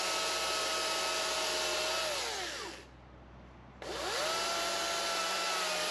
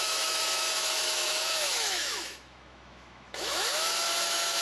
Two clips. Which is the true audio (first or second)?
first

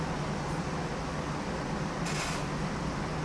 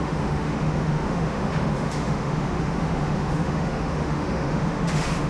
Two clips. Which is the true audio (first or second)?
first